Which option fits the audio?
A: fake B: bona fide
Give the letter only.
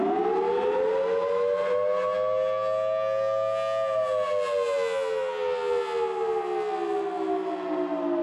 B